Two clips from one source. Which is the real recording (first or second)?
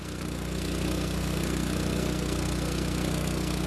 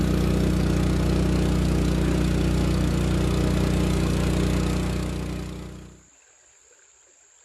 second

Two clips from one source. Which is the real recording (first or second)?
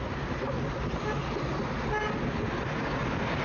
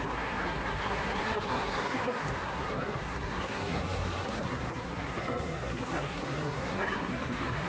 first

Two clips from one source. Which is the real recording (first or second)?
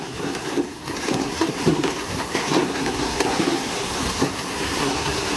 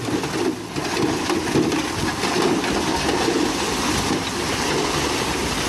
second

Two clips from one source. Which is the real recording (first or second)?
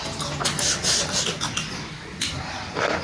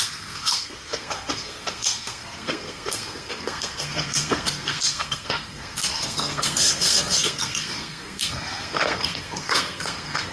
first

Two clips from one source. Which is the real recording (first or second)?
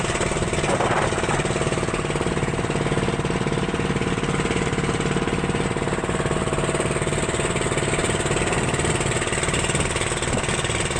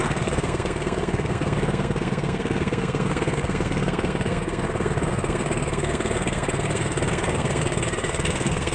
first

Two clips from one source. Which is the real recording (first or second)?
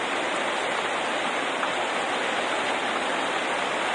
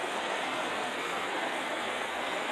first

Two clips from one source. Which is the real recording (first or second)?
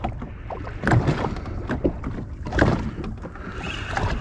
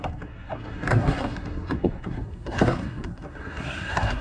first